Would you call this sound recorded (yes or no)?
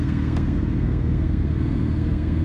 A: no